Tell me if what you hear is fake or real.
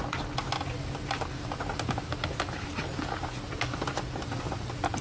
real